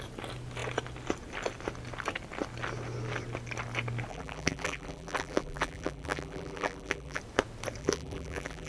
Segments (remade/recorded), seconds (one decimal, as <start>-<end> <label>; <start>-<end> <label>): 0.0-4.1 recorded; 4.1-7.2 remade; 7.2-7.8 recorded; 7.8-8.7 remade

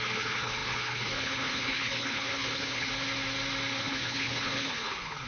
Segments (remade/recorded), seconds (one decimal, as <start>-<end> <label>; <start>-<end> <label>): 0.0-2.9 remade; 2.9-3.8 recorded; 3.8-5.3 remade

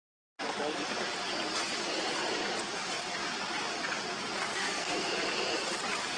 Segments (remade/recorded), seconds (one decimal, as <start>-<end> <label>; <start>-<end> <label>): 0.0-4.5 recorded; 4.5-5.1 remade; 5.1-6.2 recorded

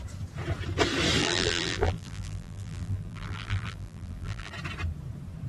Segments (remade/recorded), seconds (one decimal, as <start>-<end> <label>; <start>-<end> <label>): 0.0-1.2 recorded; 1.2-4.5 remade; 4.5-5.5 recorded

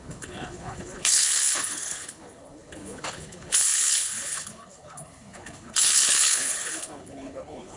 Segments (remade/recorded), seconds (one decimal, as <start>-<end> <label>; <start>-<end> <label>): 0.0-7.8 remade

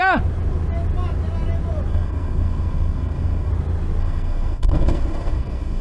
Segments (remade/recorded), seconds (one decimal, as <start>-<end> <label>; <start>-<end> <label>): 0.0-1.9 recorded; 1.9-3.5 remade; 3.5-4.0 recorded; 4.0-5.8 remade